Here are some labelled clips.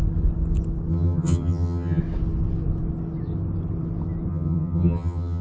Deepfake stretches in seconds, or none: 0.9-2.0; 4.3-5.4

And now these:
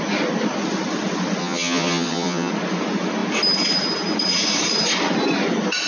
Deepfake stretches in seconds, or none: 1.4-2.5

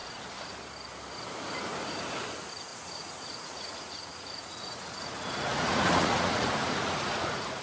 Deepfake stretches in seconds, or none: 2.7-7.6